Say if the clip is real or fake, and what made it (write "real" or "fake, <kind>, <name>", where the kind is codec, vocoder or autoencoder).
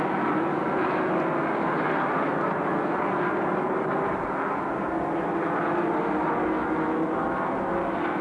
real